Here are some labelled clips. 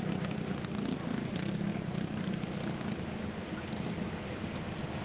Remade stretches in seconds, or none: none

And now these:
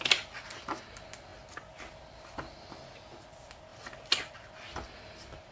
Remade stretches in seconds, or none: none

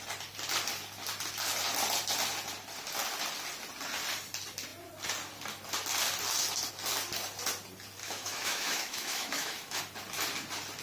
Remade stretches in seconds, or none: 8.0-9.8

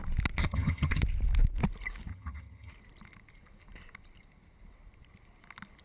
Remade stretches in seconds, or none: 0.4-1.0; 2.1-2.7

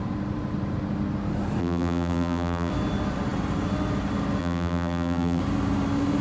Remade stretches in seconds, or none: 1.6-2.7; 4.4-5.4

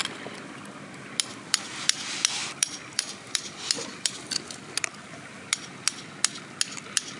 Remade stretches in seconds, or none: 2.4-4.1